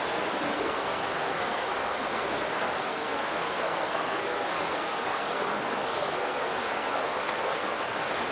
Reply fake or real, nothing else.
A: fake